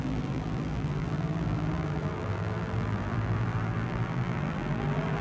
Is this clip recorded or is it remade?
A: remade